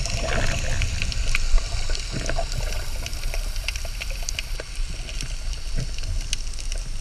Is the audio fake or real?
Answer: real